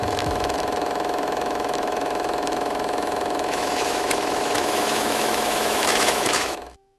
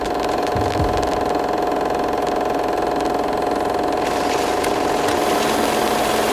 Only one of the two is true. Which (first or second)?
second